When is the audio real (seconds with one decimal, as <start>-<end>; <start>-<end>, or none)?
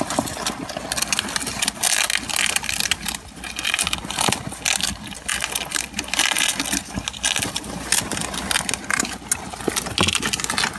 0.0-5.3; 7.3-10.8